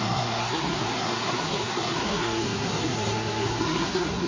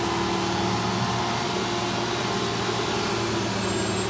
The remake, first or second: first